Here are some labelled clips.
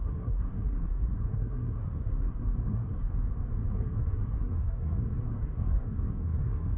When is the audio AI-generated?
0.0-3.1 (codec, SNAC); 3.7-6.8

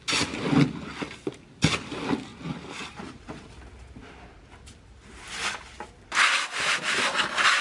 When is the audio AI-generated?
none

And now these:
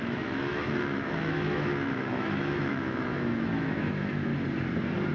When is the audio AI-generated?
0.0-4.3 (autoencoder, DAC-VAE)

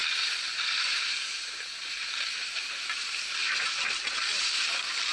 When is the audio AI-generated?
0.0-0.5 (vocoder, BigVGAN v2); 0.9-2.7

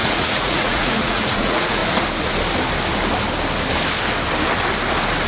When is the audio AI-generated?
0.0-1.8 (vocoder, Vocos)

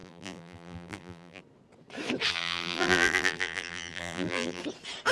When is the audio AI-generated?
0.0-1.4 (vocoder, BigVGAN v2); 2.3-4.6